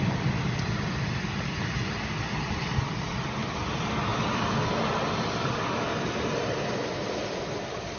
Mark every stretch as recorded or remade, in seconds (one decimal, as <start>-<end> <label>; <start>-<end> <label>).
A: 0.0-4.1 recorded; 4.1-4.6 remade; 4.6-8.0 recorded